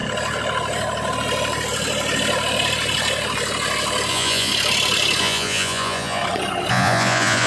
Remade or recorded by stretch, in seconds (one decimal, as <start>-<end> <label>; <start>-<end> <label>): 0.0-4.1 recorded; 4.1-4.5 remade; 4.5-5.2 recorded; 5.2-6.2 remade; 6.2-6.7 recorded; 6.7-7.5 remade